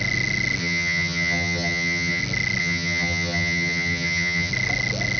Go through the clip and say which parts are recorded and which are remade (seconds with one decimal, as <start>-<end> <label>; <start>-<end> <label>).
0.0-0.6 recorded; 0.6-2.2 remade; 2.2-2.6 recorded; 2.6-4.5 remade; 4.5-5.2 recorded